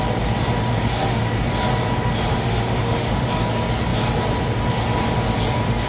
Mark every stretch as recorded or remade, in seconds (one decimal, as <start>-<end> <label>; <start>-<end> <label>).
0.0-0.7 recorded; 0.7-1.2 remade; 1.2-2.3 recorded; 2.3-3.3 remade; 3.3-5.9 recorded